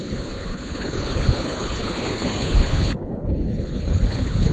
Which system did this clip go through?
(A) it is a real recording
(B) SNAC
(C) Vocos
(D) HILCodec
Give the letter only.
D